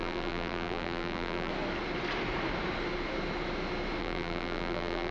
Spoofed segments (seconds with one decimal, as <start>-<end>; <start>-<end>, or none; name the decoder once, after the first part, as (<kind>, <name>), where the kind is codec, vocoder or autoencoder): 0.0-1.5 (vocoder, BigVGAN v2); 4.0-5.1